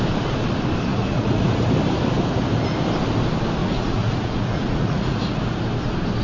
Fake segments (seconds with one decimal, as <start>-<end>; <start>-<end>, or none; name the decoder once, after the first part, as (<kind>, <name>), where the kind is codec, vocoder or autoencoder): 0.9-1.6 (vocoder, Vocos); 3.6-5.2